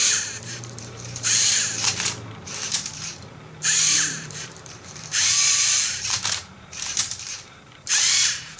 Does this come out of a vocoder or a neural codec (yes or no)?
yes